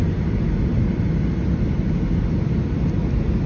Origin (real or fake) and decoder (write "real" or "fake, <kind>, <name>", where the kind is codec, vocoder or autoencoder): real